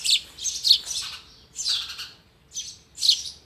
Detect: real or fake real